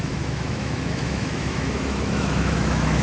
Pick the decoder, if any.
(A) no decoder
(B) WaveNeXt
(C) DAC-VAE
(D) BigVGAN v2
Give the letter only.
C